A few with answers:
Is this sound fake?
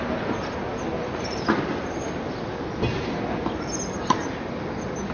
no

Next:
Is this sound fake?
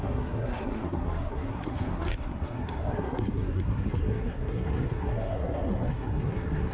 yes